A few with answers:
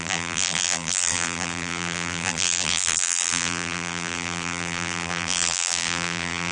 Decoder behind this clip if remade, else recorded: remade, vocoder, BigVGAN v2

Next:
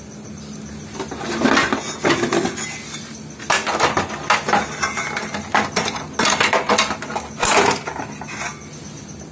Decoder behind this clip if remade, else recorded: recorded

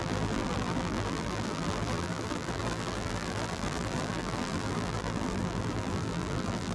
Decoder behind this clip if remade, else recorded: remade, vocoder, BigVGAN v2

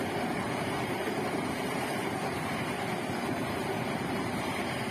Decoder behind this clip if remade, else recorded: remade, vocoder, BigVGAN v2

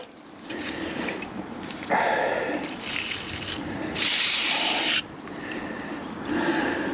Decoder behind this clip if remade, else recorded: remade, vocoder, BigVGAN v2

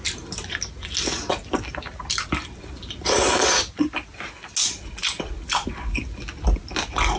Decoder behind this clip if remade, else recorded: recorded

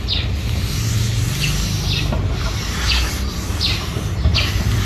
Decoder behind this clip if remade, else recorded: recorded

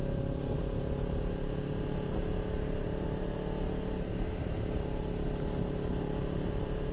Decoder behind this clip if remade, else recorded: recorded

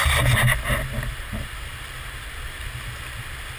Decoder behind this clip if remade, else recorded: recorded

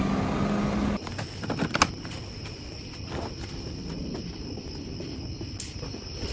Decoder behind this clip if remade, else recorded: recorded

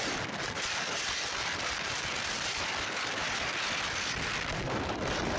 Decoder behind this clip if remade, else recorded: remade, vocoder, BigVGAN v2